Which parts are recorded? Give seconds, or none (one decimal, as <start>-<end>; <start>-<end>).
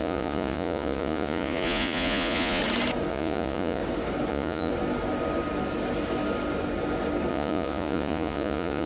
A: 2.6-3.1; 3.8-4.3; 4.7-7.3